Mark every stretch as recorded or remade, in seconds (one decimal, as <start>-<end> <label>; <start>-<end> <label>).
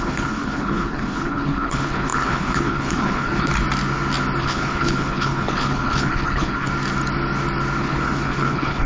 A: 0.0-3.5 remade; 3.5-4.4 recorded; 4.4-6.7 remade; 6.7-7.8 recorded; 7.8-8.9 remade